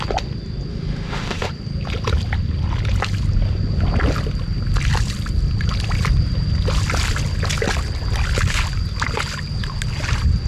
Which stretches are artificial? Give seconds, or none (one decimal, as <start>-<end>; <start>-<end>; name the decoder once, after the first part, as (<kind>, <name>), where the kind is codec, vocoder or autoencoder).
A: 0.7-1.5 (autoencoder, DAC-VAE)